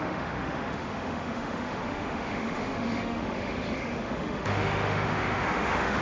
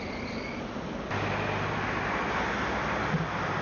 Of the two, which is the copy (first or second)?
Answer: first